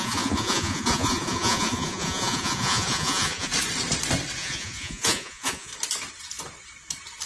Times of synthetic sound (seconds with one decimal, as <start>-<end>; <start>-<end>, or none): 0.0-3.5; 4.4-5.7